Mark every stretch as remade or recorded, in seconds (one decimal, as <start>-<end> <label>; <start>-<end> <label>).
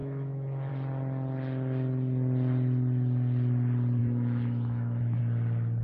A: 0.0-0.7 remade; 0.7-4.0 recorded; 4.0-5.2 remade; 5.2-5.8 recorded